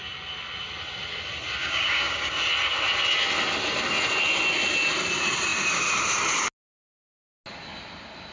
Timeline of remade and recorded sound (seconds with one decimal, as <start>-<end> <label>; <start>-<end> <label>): 0.0-1.6 recorded; 1.6-2.3 remade; 2.3-8.3 recorded